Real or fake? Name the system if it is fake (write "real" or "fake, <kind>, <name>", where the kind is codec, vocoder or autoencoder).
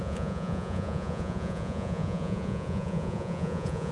fake, vocoder, Vocos